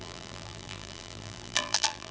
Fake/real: fake